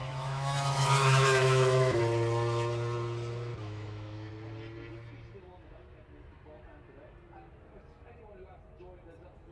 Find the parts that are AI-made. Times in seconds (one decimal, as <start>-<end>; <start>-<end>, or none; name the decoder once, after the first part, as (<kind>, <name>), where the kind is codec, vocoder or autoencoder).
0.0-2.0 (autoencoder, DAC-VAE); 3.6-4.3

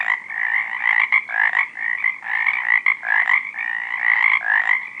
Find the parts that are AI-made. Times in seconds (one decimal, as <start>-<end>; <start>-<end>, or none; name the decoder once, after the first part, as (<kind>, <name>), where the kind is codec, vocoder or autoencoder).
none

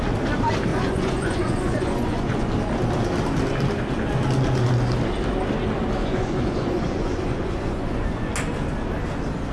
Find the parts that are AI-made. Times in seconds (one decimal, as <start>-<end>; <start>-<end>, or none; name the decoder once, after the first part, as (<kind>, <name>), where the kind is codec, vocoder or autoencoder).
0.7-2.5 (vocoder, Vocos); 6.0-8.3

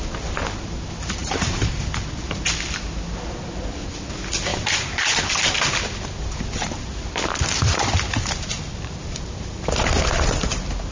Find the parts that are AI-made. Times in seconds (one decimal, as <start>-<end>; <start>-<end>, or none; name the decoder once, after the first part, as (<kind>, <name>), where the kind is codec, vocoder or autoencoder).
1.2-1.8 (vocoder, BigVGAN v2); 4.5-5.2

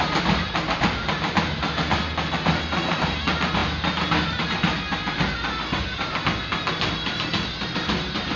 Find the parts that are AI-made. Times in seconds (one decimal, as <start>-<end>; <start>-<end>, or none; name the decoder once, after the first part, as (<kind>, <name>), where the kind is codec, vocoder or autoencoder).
none

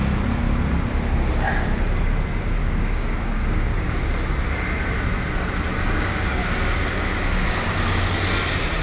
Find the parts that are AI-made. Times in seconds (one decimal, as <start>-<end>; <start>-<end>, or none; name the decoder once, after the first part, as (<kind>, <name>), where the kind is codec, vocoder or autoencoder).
2.6-4.0 (codec, DAC); 5.7-6.4